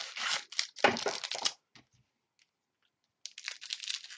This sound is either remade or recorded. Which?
recorded